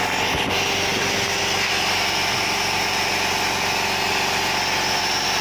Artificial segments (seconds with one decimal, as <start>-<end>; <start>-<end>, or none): none